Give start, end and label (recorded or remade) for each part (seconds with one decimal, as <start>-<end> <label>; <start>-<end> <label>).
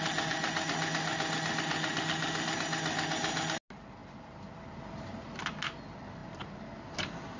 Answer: 0.0-6.2 recorded; 6.2-7.4 remade